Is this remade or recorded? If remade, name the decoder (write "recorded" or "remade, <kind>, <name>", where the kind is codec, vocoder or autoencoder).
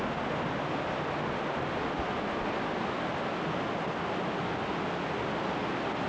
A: recorded